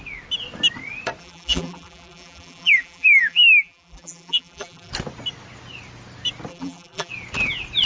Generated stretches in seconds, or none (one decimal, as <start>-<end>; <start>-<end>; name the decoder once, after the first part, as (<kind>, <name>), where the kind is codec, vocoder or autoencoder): 1.2-4.9 (vocoder, BigVGAN v2); 6.5-7.1

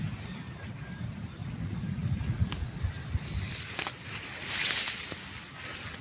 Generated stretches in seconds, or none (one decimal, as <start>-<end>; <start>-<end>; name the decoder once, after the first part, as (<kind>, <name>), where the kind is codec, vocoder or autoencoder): 1.4-2.7 (vocoder, Vocos)

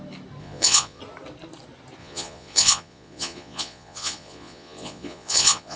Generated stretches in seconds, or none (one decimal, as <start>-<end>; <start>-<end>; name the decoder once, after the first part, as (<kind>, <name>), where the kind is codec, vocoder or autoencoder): 0.4-1.0 (vocoder, Vocos); 2.0-5.8

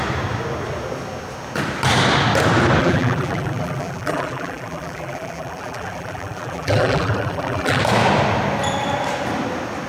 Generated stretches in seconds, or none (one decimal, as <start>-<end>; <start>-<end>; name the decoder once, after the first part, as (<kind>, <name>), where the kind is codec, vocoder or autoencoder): 2.8-7.8 (vocoder, BigVGAN v2)

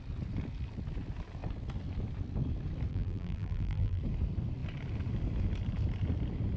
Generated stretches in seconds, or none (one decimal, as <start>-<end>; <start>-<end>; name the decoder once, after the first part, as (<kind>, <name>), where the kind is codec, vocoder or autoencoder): 2.9-4.0 (vocoder, BigVGAN v2)

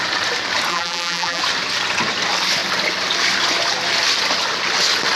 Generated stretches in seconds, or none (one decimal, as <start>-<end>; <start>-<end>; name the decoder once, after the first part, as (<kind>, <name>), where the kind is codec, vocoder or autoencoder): 0.7-1.4 (vocoder, BigVGAN v2)